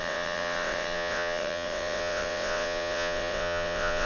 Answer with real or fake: fake